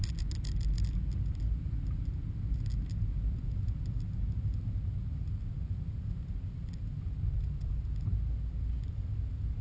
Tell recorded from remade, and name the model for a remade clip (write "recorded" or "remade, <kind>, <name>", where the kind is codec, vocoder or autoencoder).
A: recorded